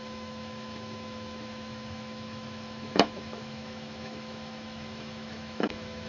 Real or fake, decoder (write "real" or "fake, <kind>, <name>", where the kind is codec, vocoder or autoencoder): fake, autoencoder, DAC-VAE